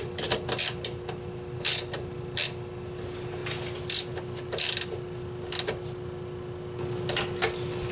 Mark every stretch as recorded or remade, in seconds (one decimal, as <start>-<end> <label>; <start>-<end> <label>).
0.0-7.9 recorded